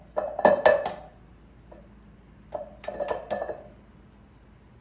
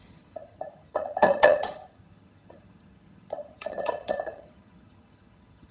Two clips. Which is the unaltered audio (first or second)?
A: first